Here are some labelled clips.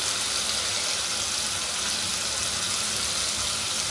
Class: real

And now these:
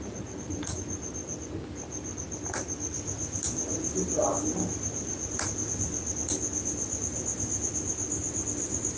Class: real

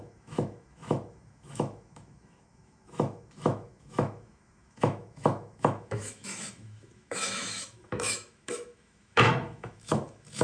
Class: fake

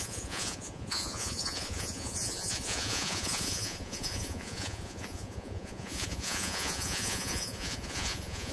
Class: fake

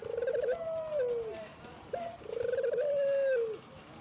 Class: real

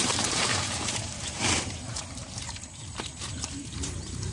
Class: fake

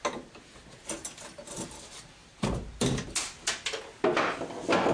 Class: real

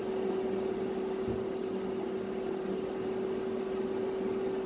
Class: real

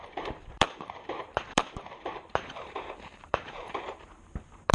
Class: fake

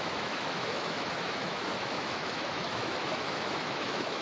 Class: fake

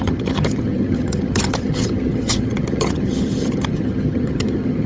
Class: fake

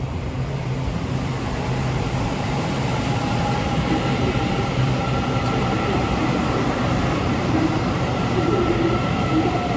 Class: fake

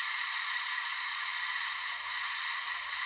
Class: fake